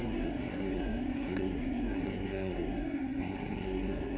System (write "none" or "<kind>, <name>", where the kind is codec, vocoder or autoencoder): codec, SNAC